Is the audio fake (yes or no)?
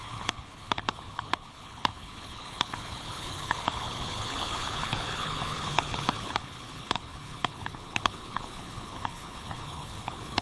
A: yes